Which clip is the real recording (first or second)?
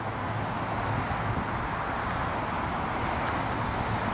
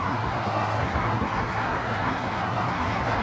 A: first